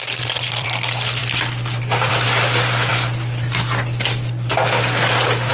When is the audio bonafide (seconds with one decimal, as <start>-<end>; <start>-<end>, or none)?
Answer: 1.2-2.1; 2.9-5.5